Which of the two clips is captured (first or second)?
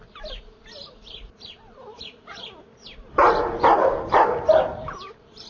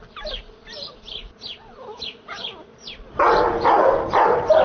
second